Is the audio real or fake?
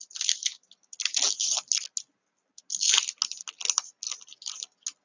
real